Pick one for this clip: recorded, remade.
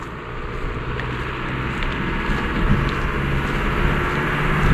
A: recorded